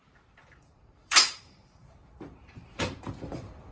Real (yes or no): no